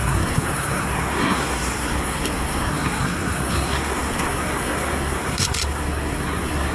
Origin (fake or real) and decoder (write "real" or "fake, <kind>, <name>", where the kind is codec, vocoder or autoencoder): fake, codec, SNAC